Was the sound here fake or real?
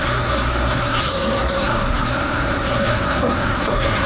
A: fake